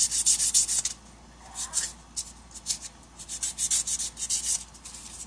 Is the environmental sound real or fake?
real